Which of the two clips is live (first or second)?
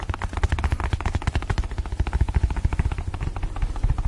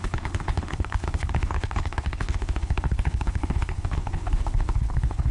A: first